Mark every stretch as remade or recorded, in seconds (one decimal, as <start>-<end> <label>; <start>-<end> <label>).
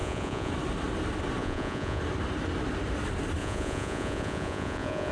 0.0-0.5 remade; 0.5-1.4 recorded; 1.4-2.0 remade; 2.0-3.4 recorded; 3.4-5.1 remade